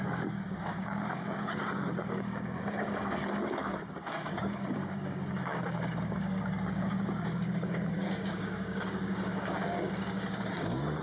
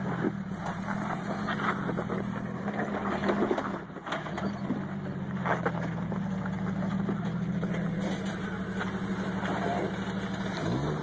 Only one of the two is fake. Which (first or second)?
first